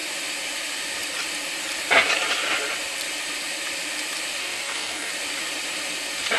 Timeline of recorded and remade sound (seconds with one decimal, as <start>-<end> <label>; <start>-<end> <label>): 0.0-4.4 recorded; 4.4-5.1 remade; 5.1-6.4 recorded

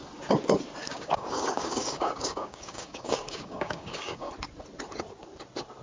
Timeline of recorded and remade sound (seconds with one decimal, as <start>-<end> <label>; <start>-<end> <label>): 0.0-0.8 recorded; 0.8-4.3 remade; 4.3-5.8 recorded

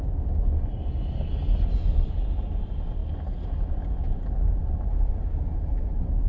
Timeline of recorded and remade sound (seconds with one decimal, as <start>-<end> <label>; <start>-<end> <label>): 0.0-6.3 recorded

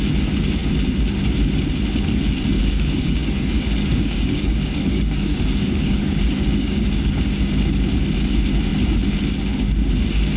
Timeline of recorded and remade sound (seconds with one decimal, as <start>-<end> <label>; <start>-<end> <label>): 0.0-2.6 recorded; 2.6-7.4 remade; 7.4-10.4 recorded

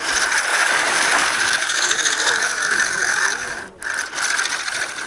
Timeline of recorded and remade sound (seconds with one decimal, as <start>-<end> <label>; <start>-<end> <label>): 0.0-0.5 recorded; 0.5-3.6 remade; 3.6-5.1 recorded